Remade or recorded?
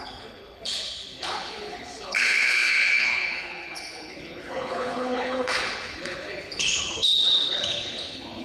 remade